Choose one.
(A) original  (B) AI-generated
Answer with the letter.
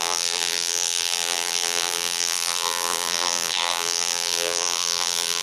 B